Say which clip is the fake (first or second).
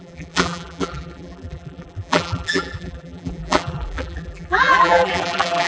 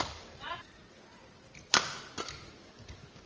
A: first